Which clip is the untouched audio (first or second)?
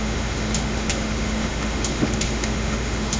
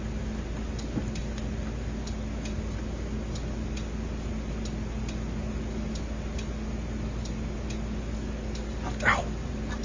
second